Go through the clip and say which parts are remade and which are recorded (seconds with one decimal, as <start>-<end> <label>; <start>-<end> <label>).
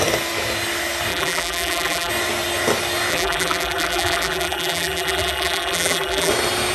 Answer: 0.0-1.1 recorded; 1.1-2.1 remade; 2.1-3.1 recorded; 3.1-6.3 remade; 6.3-6.7 recorded